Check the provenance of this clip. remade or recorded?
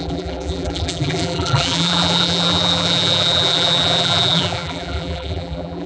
remade